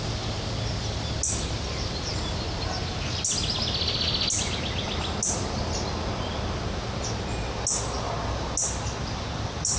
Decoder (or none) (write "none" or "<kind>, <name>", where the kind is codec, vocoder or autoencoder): none